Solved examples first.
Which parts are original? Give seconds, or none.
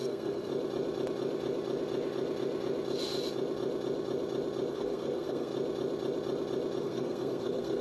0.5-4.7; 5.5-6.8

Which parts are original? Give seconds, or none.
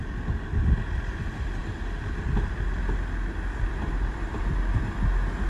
0.0-1.6; 4.5-5.5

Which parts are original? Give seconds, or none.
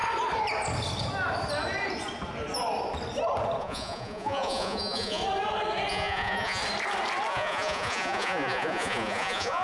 0.0-3.6; 5.2-5.9; 6.6-7.3